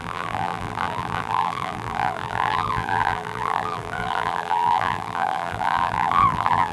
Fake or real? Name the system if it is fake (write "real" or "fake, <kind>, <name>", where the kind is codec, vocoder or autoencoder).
fake, vocoder, BigVGAN v2